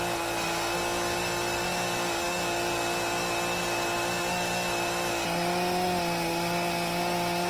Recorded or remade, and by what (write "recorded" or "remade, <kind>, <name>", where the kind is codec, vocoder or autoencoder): recorded